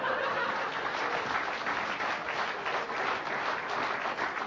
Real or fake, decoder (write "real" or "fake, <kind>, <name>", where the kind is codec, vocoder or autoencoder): real